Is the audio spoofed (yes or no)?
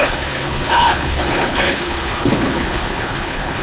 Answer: yes